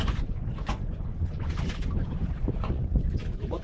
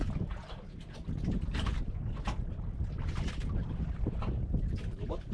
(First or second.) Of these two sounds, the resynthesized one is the first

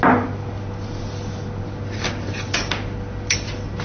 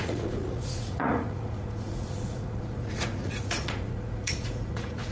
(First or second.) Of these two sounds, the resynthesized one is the second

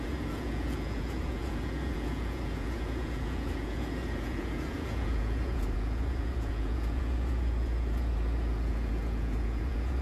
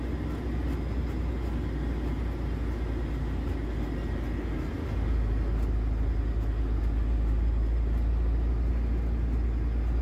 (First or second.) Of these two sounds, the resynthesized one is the first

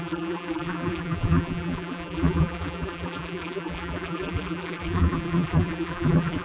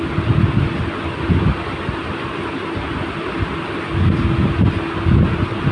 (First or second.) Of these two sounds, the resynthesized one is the first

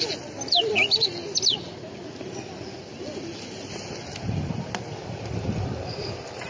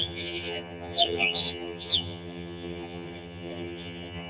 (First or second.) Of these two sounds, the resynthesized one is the second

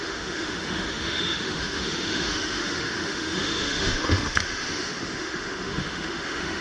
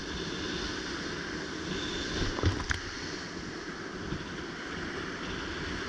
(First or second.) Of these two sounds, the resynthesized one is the first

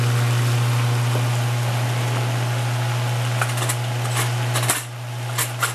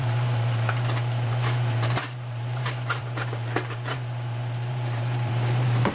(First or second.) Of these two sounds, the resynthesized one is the second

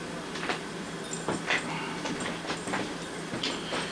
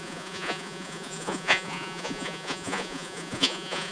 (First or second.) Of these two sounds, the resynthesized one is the second